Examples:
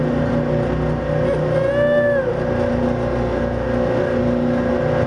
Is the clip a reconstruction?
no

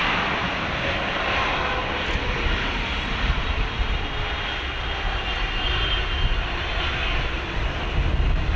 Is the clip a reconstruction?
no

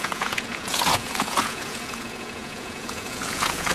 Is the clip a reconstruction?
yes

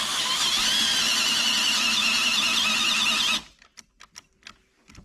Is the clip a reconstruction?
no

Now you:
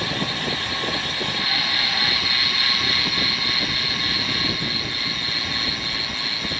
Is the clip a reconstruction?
no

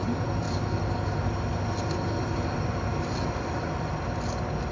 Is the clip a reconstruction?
no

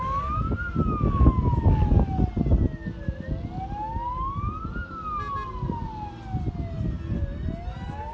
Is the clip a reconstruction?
no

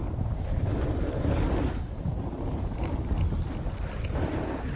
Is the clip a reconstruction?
no